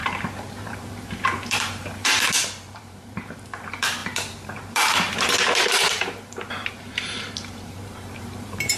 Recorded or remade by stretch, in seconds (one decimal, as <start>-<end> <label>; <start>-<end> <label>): 0.0-8.8 remade